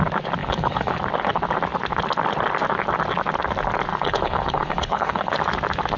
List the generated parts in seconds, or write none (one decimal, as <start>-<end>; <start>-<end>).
0.4-1.0; 3.9-5.3